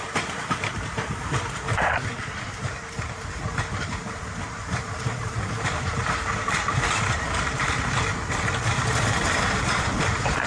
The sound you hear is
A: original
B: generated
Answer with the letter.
B